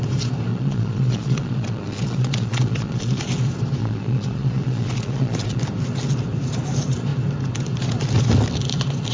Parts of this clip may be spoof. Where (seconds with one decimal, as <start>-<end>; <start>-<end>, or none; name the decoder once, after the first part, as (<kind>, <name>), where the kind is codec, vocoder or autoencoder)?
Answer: 0.5-3.2 (vocoder, Vocos); 3.8-5.6